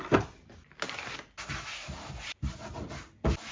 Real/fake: real